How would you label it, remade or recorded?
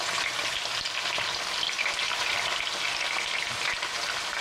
recorded